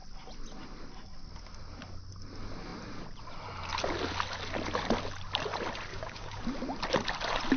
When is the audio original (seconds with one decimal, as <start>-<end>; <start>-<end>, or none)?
0.0-5.9; 6.4-7.6